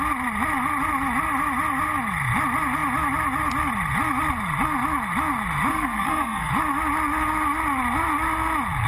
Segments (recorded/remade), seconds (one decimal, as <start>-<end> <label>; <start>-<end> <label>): 0.0-5.7 recorded; 5.7-6.5 remade; 6.5-8.9 recorded